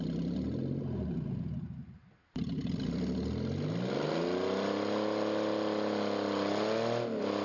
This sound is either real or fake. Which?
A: real